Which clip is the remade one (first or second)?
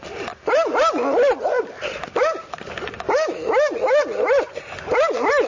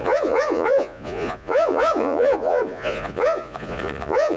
second